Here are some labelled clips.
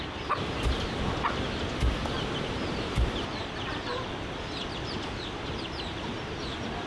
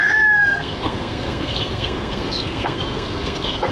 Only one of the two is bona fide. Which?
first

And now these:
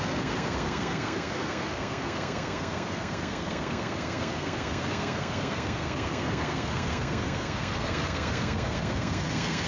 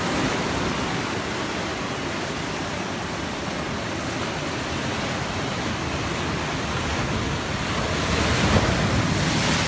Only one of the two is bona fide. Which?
second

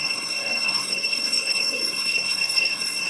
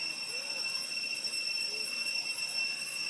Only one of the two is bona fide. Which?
second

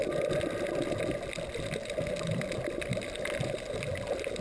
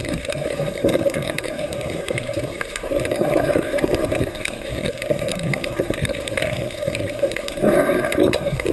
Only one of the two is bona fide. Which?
first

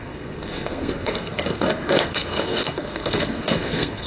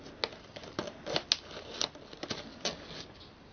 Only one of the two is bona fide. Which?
second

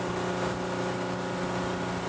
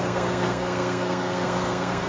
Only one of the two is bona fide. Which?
first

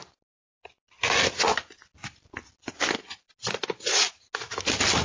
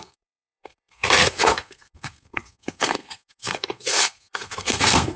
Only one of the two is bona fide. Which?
first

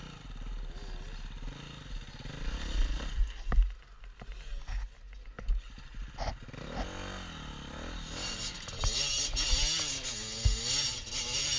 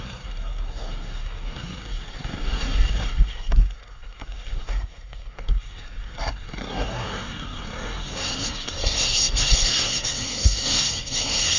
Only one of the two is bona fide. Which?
first